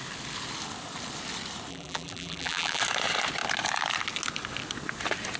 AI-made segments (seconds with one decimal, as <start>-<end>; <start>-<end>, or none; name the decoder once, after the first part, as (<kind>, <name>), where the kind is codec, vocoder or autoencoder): 1.7-2.8 (vocoder, BigVGAN v2)